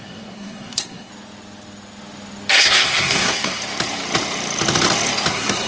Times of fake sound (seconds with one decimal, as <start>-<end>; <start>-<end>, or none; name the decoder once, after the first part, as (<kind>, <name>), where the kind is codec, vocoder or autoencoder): 0.0-1.1 (codec, SNAC); 2.6-3.6; 5.3-5.7